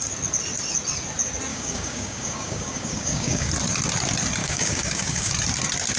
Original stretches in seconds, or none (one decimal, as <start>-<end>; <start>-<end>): 0.0-1.5; 3.5-4.4; 5.3-6.0